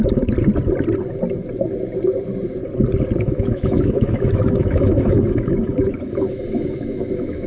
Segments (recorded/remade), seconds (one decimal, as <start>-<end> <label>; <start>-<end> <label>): 0.0-3.2 recorded; 3.2-7.5 remade